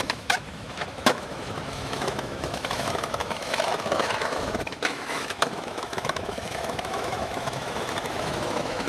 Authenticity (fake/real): fake